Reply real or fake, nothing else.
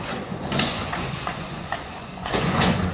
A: fake